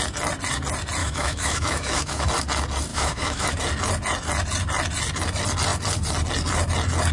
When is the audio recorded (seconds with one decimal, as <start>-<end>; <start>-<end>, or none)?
0.0-1.0; 2.3-2.9; 3.5-7.1